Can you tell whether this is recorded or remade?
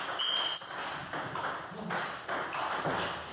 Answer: recorded